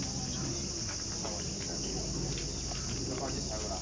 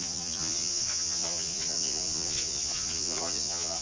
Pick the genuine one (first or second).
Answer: first